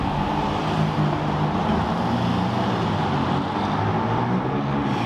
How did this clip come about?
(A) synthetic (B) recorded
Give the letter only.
B